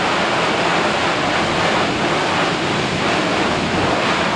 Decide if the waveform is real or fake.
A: real